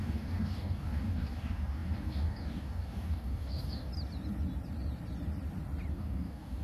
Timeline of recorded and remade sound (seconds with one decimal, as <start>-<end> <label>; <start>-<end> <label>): 0.0-3.9 remade; 3.9-5.9 recorded; 5.9-6.6 remade